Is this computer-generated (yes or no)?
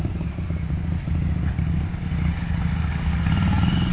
no